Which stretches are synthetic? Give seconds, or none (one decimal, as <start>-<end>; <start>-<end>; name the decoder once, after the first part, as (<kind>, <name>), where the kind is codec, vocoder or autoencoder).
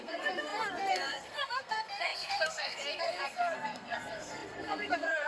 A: 0.0-5.3 (codec, SNAC)